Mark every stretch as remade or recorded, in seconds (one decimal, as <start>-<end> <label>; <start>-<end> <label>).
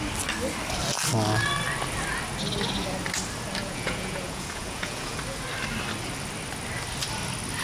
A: 0.0-3.6 recorded; 3.6-5.2 remade; 5.2-7.6 recorded